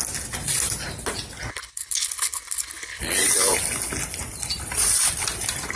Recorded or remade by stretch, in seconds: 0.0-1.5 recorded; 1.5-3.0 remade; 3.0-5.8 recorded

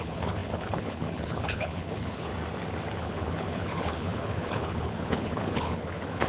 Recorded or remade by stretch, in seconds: 0.0-2.3 remade; 2.3-3.0 recorded; 3.0-6.3 remade

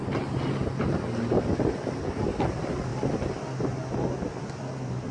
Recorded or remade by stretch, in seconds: 0.0-5.1 recorded

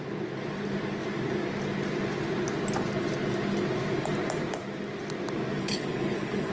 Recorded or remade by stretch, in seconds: 0.0-5.6 recorded; 5.6-6.5 remade

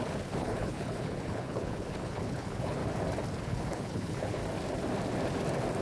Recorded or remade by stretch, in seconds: 0.0-2.8 remade; 2.8-3.4 recorded; 3.4-4.4 remade; 4.4-5.8 recorded